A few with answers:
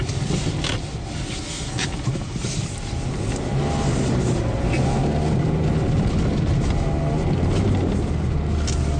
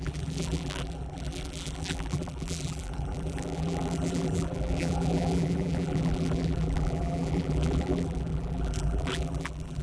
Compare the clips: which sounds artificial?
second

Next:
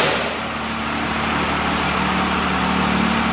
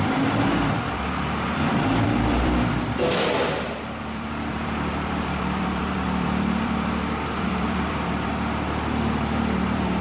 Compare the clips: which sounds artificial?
second